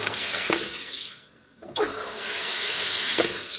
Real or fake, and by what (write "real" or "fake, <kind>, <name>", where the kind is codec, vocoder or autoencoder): fake, codec, SNAC